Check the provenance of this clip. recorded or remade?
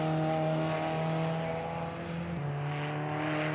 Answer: recorded